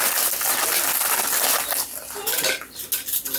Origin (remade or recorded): recorded